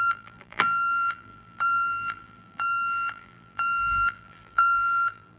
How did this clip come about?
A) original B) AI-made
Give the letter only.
B